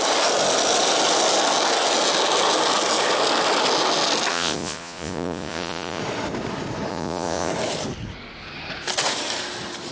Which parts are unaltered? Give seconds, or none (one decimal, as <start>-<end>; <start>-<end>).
0.0-4.3; 6.0-6.9; 7.5-9.9